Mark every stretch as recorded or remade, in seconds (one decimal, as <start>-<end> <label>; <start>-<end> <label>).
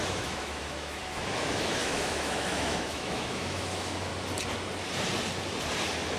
0.0-4.1 remade; 4.1-6.2 recorded